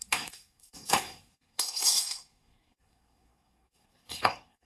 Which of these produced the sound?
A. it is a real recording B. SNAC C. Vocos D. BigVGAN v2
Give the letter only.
B